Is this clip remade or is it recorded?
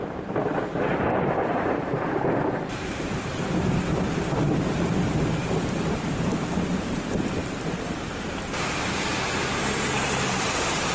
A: remade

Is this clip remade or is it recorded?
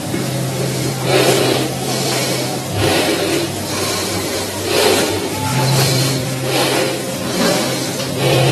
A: remade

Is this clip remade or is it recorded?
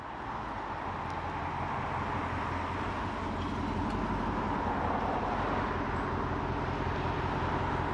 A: recorded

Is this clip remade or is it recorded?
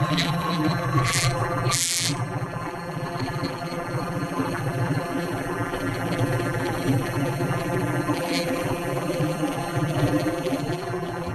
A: remade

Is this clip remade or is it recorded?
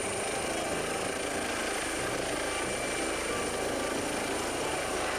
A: recorded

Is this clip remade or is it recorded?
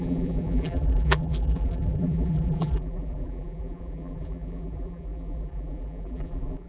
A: remade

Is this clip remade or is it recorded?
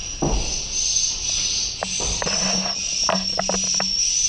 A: recorded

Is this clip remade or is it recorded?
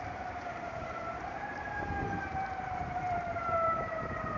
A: remade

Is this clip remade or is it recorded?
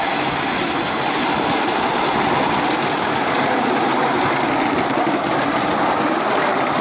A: recorded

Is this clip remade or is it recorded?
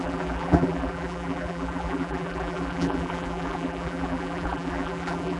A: remade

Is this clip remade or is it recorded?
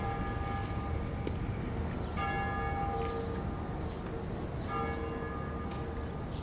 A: recorded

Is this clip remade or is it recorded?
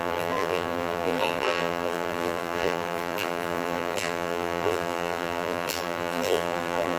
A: remade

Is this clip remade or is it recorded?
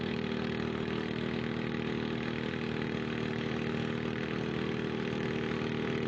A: remade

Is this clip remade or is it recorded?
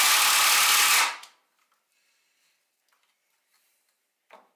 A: recorded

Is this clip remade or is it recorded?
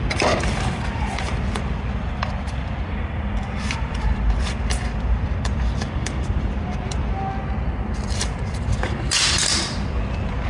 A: remade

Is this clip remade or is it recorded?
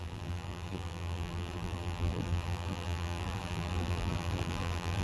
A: remade